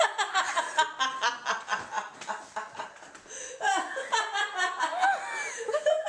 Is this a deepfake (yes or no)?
no